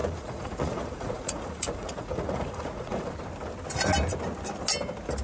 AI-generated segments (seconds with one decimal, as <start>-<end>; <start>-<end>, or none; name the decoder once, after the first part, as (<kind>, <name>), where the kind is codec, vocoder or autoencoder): 0.0-3.1 (vocoder, Vocos)